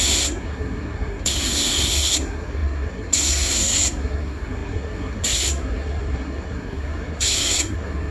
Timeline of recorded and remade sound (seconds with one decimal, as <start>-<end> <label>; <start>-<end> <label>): 0.0-8.1 remade